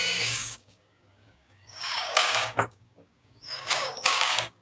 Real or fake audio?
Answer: fake